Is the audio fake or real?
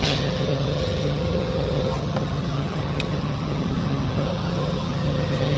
fake